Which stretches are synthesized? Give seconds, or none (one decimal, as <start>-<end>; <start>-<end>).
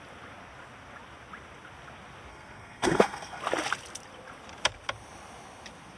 2.3-3.4